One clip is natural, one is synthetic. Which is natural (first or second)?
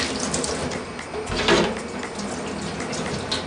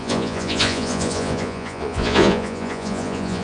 first